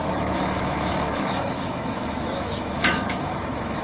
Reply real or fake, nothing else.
fake